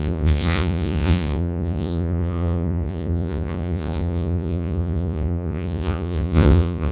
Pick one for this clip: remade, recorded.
remade